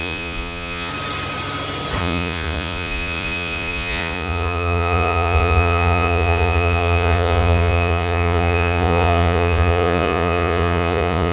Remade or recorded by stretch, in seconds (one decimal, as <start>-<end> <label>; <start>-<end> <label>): 0.0-0.9 remade; 0.9-2.0 recorded; 2.0-11.3 remade